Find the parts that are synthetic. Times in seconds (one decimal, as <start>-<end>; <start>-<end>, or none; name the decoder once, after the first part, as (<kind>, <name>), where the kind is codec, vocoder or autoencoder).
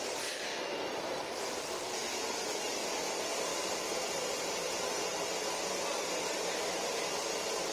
0.5-1.4 (vocoder, BigVGAN v2); 2.0-2.8; 3.5-7.3